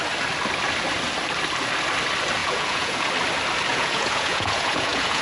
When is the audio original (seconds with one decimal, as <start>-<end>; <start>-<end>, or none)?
0.0-2.4; 3.1-3.7